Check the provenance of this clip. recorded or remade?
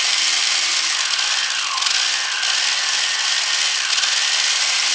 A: recorded